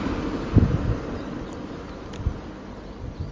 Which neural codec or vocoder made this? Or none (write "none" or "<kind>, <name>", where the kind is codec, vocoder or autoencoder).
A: none